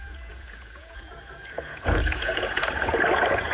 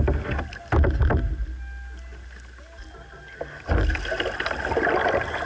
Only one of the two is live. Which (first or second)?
second